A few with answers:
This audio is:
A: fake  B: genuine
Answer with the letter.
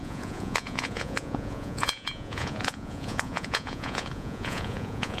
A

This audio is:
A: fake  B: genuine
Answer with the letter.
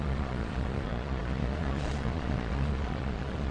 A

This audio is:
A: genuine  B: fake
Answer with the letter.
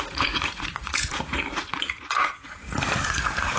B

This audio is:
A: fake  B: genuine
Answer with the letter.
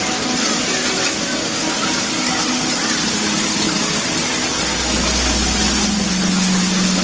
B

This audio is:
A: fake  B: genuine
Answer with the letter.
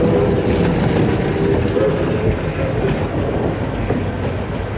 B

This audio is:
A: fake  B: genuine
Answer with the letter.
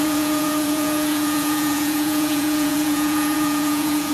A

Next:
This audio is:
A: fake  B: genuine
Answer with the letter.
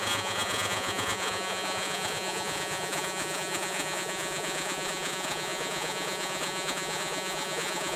A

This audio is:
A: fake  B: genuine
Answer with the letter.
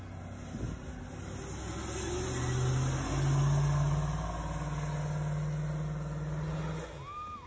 B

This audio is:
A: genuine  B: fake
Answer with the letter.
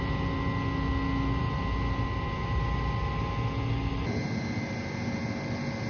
A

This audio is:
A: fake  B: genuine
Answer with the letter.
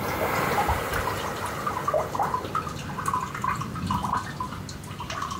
B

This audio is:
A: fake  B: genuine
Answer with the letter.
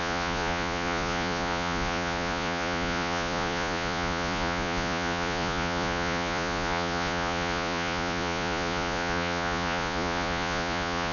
A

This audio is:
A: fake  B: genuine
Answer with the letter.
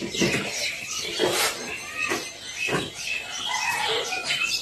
B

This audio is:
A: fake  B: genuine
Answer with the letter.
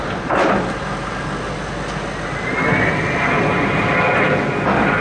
B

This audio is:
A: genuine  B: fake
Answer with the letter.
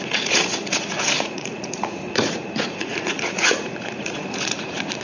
B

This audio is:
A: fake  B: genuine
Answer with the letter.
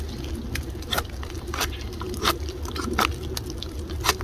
B